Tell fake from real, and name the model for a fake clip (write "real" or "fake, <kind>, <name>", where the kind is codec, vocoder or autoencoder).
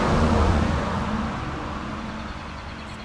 fake, vocoder, Vocos